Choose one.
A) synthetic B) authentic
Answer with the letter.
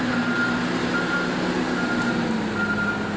B